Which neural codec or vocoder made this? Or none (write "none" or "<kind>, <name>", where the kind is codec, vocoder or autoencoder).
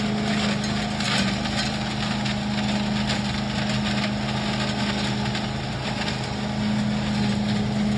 none